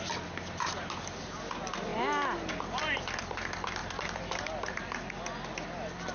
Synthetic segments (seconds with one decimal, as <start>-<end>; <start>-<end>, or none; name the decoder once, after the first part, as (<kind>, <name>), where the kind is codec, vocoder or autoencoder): 1.9-2.5 (vocoder, BigVGAN v2); 3.8-4.8